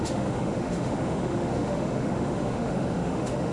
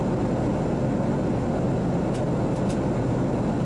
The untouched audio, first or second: second